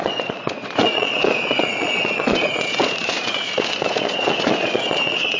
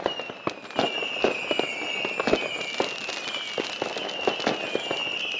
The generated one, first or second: first